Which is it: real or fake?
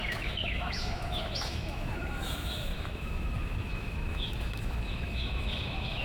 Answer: fake